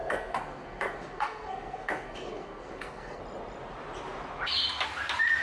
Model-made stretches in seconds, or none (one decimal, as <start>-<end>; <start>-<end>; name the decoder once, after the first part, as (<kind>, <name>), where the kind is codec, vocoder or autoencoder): 0.0-3.2 (codec, SNAC)